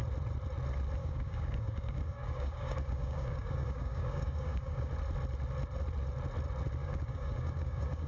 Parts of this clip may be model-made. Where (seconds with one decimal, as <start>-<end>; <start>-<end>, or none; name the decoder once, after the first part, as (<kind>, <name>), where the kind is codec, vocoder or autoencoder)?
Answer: 1.0-4.9 (codec, DAC); 6.8-8.1